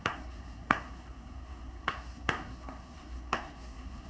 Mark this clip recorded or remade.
remade